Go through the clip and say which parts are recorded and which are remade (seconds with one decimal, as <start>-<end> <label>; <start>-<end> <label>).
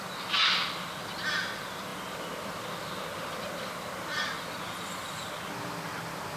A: 0.0-6.4 recorded